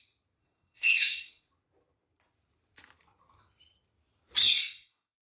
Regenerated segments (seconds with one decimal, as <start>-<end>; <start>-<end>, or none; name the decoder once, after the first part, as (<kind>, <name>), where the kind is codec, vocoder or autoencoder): 0.4-1.4 (codec, SNAC); 4.4-5.3